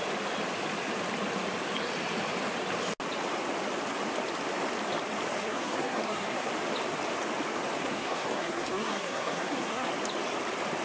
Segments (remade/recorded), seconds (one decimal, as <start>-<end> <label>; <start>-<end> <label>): 0.0-5.4 recorded; 5.4-6.5 remade; 6.5-7.8 recorded; 7.8-9.9 remade; 9.9-10.8 recorded